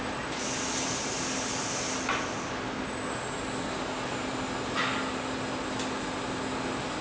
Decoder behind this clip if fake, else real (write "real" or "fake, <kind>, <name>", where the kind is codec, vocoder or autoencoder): real